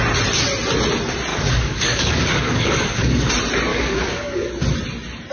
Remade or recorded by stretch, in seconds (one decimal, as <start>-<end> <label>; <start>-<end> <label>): 0.0-1.3 recorded; 1.3-3.3 remade; 3.3-3.7 recorded; 3.7-4.5 remade; 4.5-5.3 recorded